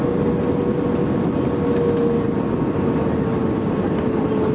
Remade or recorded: recorded